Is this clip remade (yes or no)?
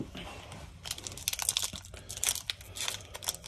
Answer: no